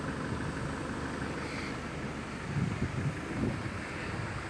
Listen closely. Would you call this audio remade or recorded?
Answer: recorded